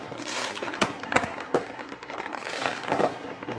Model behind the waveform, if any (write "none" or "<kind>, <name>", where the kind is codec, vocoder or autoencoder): codec, SNAC